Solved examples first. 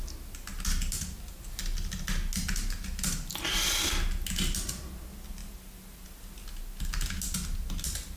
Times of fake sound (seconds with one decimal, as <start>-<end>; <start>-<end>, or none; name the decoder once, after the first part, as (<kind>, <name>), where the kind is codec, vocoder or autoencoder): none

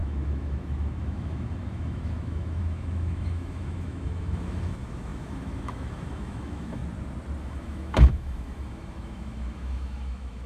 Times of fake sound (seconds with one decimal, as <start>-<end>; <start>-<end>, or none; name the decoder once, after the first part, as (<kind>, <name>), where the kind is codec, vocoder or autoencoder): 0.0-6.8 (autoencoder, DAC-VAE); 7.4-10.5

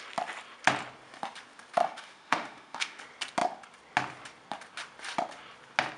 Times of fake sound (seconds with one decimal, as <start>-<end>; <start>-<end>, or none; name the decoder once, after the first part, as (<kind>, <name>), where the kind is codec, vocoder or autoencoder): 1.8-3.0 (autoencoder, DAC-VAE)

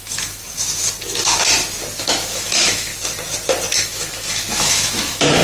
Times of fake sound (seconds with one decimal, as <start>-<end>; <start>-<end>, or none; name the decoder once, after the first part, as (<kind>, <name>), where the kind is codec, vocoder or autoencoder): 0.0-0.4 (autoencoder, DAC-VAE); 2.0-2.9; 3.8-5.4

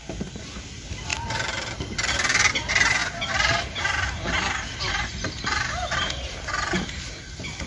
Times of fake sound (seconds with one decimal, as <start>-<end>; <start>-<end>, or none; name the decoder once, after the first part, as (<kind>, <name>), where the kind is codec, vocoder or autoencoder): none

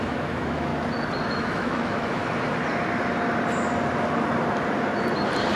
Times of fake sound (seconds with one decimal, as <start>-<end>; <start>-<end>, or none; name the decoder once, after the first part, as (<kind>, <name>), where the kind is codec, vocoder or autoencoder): 0.0-0.7 (autoencoder, DAC-VAE); 1.3-2.2

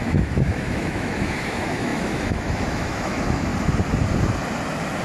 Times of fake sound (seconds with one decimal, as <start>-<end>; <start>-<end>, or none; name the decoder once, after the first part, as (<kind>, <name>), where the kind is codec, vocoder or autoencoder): 0.0-3.5 (autoencoder, DAC-VAE)